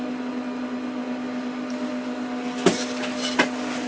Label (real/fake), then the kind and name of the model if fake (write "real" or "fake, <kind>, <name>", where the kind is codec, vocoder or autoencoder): real